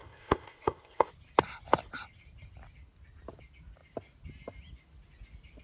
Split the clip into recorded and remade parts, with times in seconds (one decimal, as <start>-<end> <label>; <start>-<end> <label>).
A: 0.0-1.1 remade; 1.1-5.6 recorded